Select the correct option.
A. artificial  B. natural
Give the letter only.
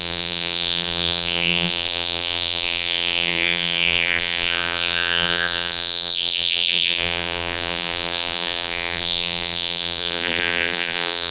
A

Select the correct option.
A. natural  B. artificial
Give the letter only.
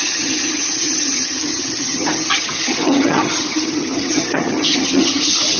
B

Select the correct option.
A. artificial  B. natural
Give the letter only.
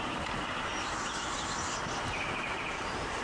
B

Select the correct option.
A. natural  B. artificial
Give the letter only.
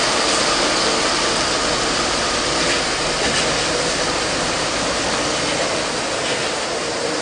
A